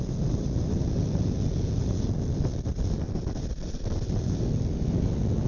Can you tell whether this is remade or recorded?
recorded